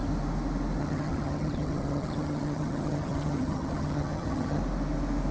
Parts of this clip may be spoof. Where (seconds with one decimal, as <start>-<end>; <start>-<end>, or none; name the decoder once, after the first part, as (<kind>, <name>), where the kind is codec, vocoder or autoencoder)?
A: 0.8-4.6 (vocoder, HiFi-GAN)